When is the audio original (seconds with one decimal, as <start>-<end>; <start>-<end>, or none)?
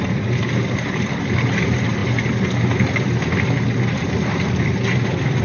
0.0-5.4